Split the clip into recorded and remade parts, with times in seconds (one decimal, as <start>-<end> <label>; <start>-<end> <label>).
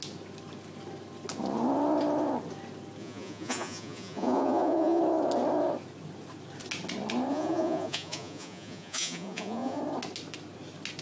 0.0-3.0 recorded; 3.0-5.0 remade; 5.0-7.3 recorded; 7.3-9.8 remade; 9.8-11.0 recorded